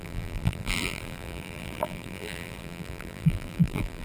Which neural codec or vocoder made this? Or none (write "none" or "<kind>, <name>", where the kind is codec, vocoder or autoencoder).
vocoder, BigVGAN v2